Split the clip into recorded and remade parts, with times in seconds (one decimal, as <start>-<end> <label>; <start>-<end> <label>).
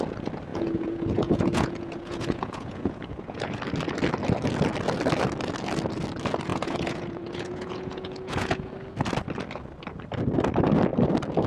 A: 0.0-0.5 recorded; 0.5-3.6 remade; 3.6-6.5 recorded; 6.5-8.7 remade; 8.7-11.5 recorded